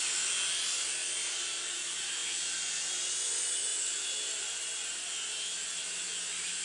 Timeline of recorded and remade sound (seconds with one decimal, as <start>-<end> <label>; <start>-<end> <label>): 0.0-6.6 recorded